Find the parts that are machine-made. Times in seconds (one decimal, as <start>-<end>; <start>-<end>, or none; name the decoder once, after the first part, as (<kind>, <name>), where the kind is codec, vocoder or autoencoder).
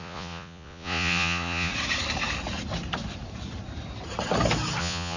0.0-1.7 (vocoder, Vocos); 4.8-5.2